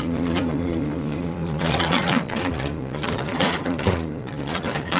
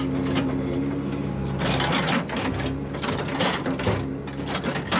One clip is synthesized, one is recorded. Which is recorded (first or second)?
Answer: second